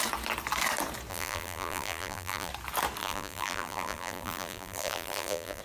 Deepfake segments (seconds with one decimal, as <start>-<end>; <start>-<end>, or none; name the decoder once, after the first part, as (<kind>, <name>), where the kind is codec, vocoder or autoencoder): 1.1-2.5 (vocoder, BigVGAN v2); 3.0-5.6